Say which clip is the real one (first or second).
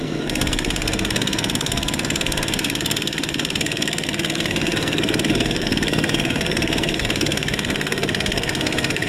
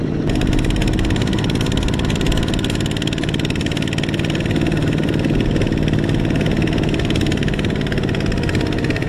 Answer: second